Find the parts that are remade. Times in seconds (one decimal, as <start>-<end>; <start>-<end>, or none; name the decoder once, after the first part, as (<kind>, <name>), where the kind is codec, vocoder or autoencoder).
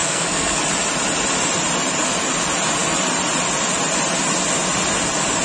0.0-0.6 (codec, SNAC)